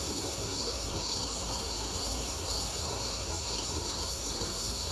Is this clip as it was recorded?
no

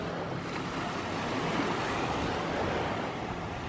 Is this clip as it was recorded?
yes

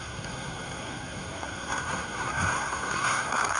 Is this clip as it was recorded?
no